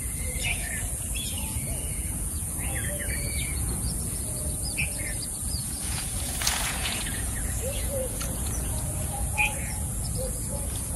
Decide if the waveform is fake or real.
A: fake